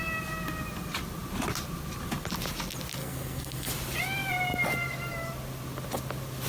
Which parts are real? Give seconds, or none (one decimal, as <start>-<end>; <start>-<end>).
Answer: 0.0-3.0; 3.7-6.5